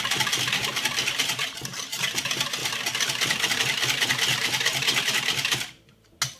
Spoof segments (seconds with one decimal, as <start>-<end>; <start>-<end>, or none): 2.6-3.6; 4.3-5.1